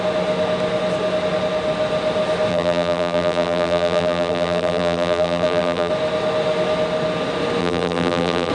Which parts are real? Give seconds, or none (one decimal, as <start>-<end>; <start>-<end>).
0.0-2.5; 5.9-7.6